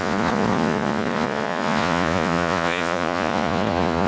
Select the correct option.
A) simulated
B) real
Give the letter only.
A